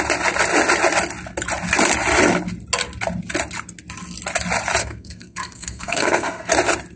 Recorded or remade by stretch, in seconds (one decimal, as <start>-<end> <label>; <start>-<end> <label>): 0.0-4.8 recorded; 4.8-6.5 remade; 6.5-7.0 recorded